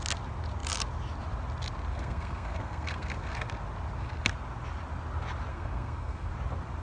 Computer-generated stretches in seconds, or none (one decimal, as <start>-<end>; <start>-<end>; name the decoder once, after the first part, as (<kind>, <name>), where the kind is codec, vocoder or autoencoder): 1.9-3.5 (codec, SNAC); 5.5-6.3

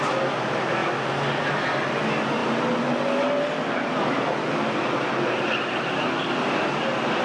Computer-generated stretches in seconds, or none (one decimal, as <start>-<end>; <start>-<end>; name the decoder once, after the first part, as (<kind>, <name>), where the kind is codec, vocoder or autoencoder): none

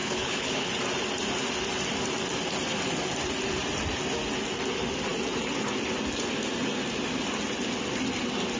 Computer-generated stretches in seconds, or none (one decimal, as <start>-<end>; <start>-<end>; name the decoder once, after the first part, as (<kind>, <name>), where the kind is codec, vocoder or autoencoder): 0.0-0.7 (codec, HILCodec)

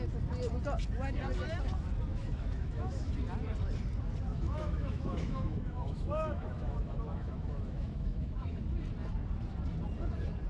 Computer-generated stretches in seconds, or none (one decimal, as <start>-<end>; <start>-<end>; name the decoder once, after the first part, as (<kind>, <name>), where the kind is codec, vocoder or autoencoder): 2.1-3.1 (autoencoder, DAC-VAE); 4.3-8.6

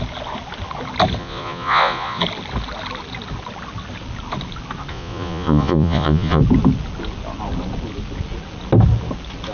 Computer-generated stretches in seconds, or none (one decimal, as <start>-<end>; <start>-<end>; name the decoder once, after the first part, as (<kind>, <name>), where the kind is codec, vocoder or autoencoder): 1.2-2.2 (vocoder, Vocos); 4.9-6.4

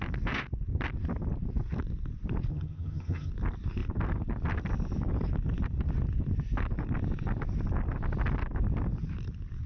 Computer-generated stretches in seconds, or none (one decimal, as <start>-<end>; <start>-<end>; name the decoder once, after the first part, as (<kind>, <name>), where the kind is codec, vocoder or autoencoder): 2.5-3.3 (vocoder, HiFi-GAN)

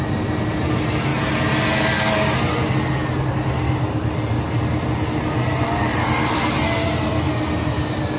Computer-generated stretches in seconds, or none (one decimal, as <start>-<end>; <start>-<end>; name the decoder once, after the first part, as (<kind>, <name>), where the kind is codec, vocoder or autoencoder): 1.1-4.4 (vocoder, BigVGAN v2); 5.9-6.5